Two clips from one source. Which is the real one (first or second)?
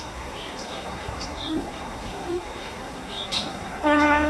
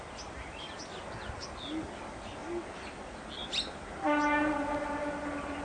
second